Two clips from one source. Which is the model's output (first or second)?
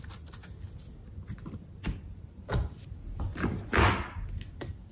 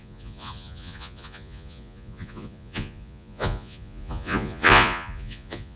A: second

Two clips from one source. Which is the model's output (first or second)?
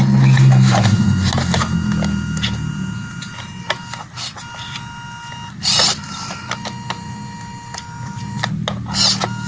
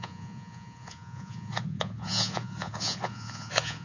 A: second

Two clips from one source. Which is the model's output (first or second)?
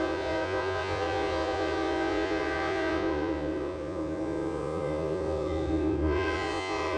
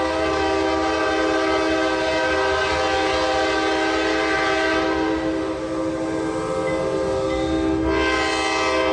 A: first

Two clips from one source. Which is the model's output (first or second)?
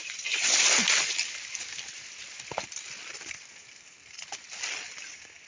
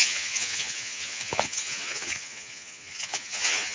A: second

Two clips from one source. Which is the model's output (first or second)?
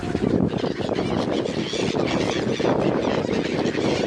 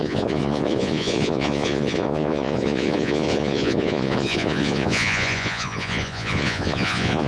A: second